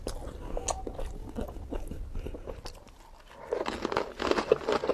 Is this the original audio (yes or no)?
yes